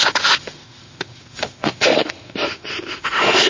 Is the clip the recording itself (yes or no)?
no